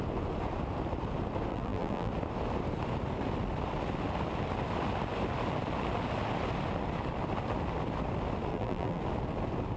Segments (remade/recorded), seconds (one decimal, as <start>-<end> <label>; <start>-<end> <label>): 0.0-1.5 recorded; 1.5-2.1 remade; 2.1-8.5 recorded; 8.5-9.0 remade; 9.0-9.8 recorded